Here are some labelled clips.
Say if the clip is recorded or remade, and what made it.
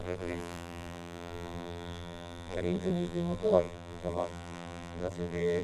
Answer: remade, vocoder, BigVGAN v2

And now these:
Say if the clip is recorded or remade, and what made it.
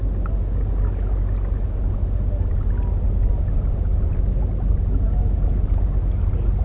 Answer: recorded